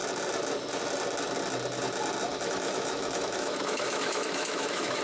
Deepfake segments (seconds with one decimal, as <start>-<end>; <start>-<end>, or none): 2.3-5.0